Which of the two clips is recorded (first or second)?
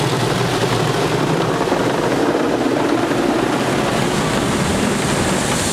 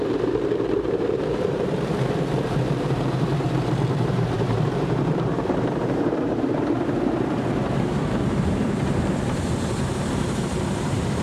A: first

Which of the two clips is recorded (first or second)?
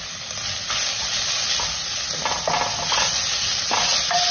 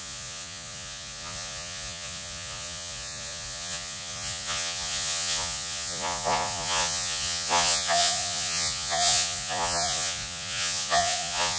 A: first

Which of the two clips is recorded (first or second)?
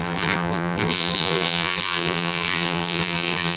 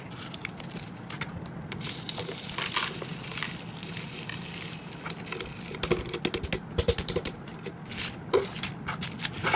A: second